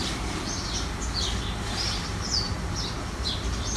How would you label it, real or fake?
real